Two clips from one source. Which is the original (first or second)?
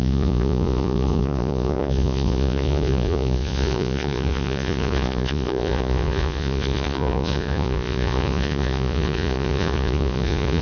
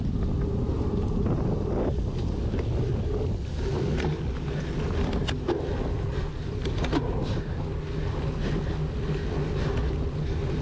second